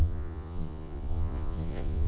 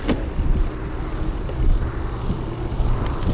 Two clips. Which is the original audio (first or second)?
second